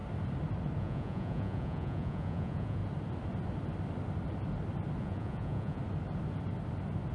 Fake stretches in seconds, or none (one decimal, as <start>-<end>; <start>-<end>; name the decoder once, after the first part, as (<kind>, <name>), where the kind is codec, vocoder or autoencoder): 0.8-2.8 (vocoder, Vocos); 5.0-5.8